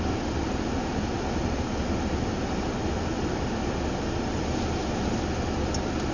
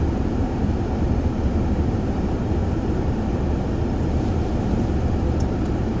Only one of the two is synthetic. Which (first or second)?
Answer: second